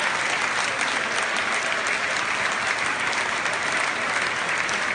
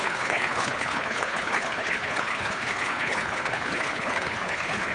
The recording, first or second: first